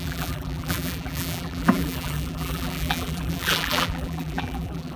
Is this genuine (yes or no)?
no